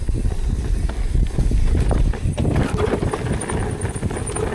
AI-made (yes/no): no